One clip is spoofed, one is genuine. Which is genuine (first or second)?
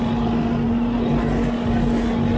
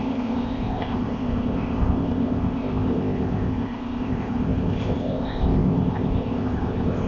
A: first